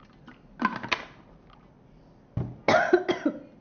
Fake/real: real